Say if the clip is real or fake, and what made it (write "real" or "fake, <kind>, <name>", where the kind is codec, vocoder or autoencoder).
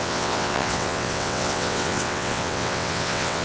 fake, vocoder, WaveNeXt